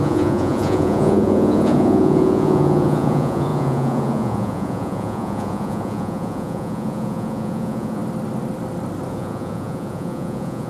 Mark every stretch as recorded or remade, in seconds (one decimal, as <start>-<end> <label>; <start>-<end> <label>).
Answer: 0.0-8.0 remade; 8.0-9.1 recorded; 9.1-10.7 remade